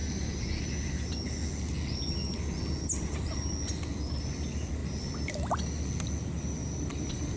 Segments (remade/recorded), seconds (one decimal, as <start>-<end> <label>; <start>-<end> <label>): 0.0-7.4 recorded